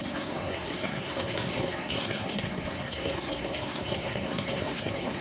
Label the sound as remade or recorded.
remade